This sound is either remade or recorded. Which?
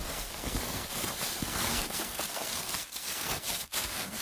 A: remade